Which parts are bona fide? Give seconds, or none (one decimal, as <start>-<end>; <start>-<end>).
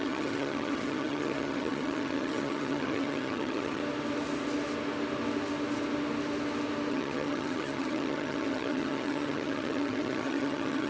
3.8-6.9